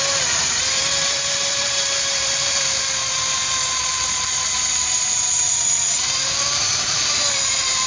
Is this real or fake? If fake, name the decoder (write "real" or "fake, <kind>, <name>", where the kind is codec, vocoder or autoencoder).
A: fake, vocoder, BigVGAN v2